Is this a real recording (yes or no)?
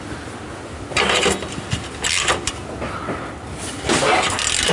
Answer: yes